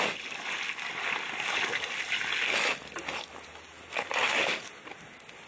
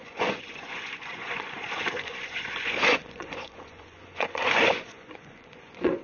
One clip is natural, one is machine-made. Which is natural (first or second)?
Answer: first